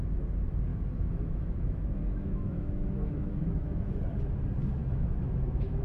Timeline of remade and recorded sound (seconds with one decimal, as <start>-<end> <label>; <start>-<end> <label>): 0.0-0.7 recorded; 0.7-4.0 remade; 4.0-4.8 recorded; 4.8-5.8 remade